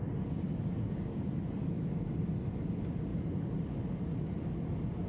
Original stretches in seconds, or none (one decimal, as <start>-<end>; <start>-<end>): 0.0-0.5; 1.3-5.1